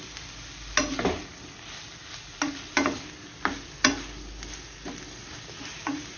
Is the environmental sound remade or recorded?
recorded